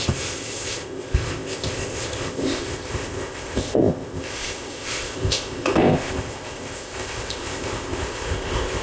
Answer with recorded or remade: remade